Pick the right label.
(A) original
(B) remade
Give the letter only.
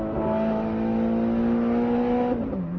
A